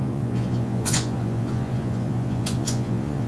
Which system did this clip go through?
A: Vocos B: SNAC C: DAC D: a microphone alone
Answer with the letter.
A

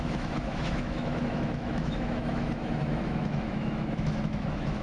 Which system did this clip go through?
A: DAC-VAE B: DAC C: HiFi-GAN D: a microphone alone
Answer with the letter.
A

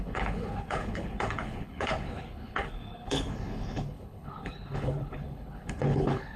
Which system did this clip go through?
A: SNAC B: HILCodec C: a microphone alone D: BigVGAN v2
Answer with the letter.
B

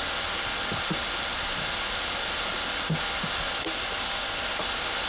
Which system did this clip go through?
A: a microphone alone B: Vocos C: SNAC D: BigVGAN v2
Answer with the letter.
A